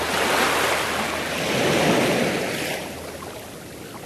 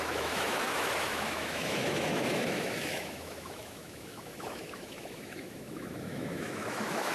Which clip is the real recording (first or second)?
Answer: first